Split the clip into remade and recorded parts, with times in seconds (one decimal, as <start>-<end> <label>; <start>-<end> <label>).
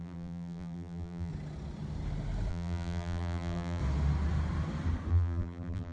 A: 0.0-1.3 remade; 1.3-2.5 recorded; 2.5-3.8 remade; 3.8-5.1 recorded; 5.1-5.9 remade